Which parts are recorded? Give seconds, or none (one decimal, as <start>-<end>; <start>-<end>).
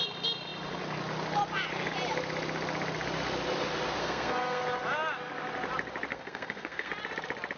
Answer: 0.0-4.0; 4.6-6.1; 6.9-7.6